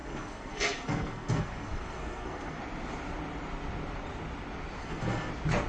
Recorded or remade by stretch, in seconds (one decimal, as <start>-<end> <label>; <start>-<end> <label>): 0.0-2.6 remade; 2.6-4.8 recorded; 4.8-5.3 remade; 5.3-5.7 recorded